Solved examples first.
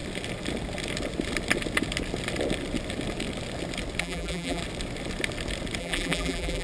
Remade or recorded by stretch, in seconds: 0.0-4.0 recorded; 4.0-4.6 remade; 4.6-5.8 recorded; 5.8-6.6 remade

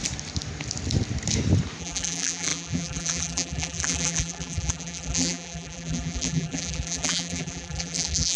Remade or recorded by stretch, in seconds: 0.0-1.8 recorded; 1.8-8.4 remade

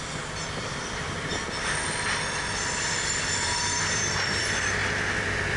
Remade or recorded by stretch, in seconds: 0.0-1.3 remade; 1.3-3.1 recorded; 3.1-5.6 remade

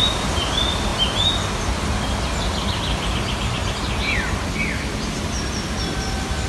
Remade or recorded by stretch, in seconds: 0.0-6.5 recorded

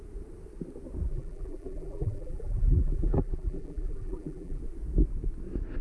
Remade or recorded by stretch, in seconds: 0.0-1.1 recorded; 1.1-4.6 remade; 4.6-5.8 recorded

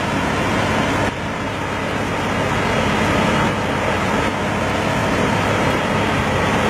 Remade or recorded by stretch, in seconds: 0.0-5.0 recorded; 5.0-5.8 remade; 5.8-6.7 recorded

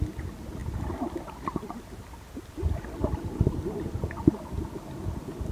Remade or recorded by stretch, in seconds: 0.0-0.6 recorded; 0.6-3.9 remade; 3.9-5.5 recorded